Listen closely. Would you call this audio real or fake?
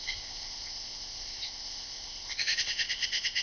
fake